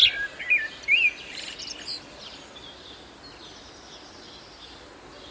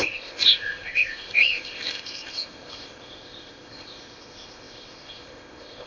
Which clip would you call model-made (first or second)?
second